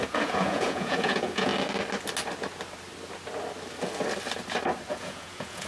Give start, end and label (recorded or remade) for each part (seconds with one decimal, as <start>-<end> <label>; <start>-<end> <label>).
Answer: 0.0-1.5 remade; 1.5-4.9 recorded; 4.9-5.7 remade